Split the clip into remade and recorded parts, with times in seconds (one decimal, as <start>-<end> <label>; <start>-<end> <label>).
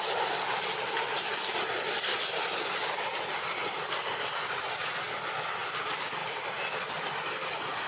0.0-7.9 recorded